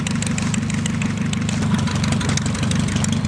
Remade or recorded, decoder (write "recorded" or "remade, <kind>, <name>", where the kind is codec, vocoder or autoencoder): recorded